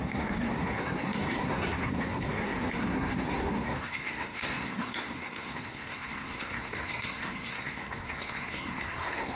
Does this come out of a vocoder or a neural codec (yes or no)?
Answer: yes